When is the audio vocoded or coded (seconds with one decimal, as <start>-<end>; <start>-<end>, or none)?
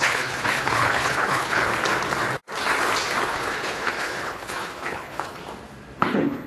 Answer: 0.0-1.7; 3.2-5.4; 6.0-6.5